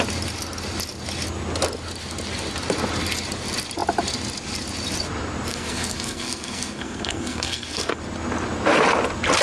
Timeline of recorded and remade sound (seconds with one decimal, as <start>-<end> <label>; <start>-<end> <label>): 0.0-5.5 recorded; 5.5-8.0 remade; 8.0-9.4 recorded